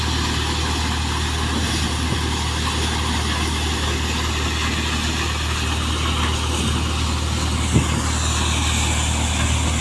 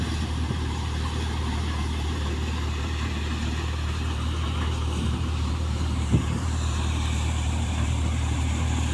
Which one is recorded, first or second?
first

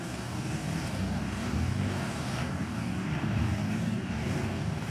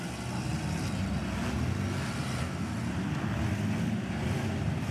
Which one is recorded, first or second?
second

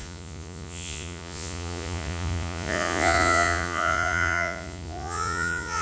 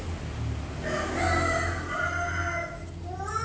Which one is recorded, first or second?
second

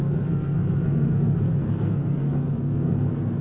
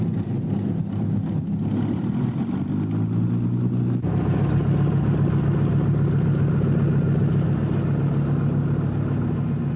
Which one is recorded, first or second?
second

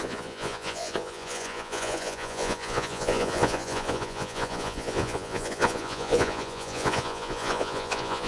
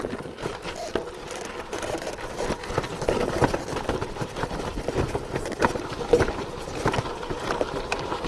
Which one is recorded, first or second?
second